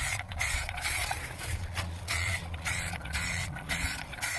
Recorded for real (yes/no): no